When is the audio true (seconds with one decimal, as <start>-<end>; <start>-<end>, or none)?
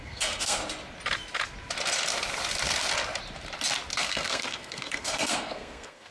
0.6-4.0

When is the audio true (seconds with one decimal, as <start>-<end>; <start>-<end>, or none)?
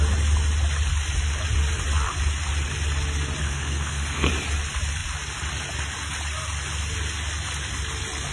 0.0-3.4; 4.3-8.3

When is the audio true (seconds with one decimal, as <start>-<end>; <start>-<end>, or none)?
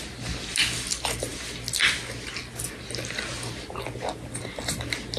0.0-5.2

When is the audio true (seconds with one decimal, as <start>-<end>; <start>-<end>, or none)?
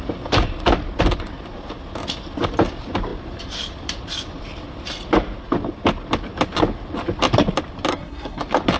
0.0-7.9; 8.4-8.8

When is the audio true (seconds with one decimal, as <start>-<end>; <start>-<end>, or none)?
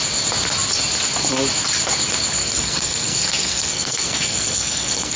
0.0-2.4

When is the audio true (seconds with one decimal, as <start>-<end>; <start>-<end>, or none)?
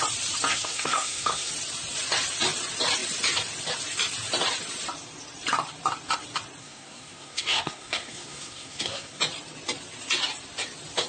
0.0-0.5; 1.5-6.6; 9.2-11.1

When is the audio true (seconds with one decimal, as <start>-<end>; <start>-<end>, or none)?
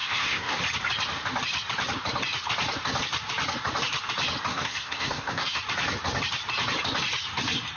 0.6-4.5; 5.6-7.8